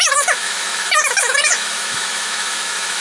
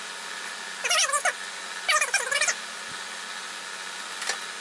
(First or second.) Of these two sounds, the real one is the second